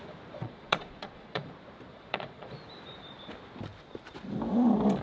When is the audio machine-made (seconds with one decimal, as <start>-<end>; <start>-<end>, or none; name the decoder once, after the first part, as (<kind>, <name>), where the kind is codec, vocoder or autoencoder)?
0.4-1.5 (vocoder, Vocos); 1.9-2.6